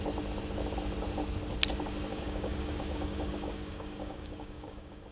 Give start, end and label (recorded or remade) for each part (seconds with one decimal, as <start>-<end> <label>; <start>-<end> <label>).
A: 0.0-2.1 recorded; 2.1-5.1 remade